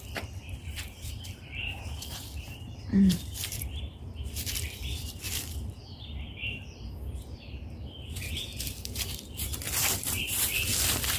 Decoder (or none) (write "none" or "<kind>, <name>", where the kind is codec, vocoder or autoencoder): vocoder, BigVGAN v2